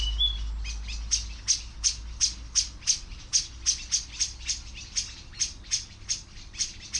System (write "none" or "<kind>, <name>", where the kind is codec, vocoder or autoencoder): none